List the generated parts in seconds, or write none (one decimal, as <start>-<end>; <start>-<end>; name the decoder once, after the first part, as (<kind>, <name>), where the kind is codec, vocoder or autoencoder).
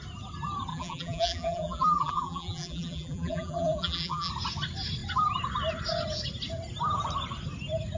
0.7-4.3 (vocoder, BigVGAN v2)